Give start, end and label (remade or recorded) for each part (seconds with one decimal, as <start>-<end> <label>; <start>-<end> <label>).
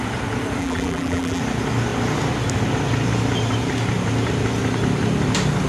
0.0-0.6 recorded; 0.6-1.4 remade; 1.4-5.7 recorded